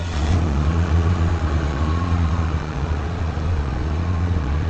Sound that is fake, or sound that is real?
fake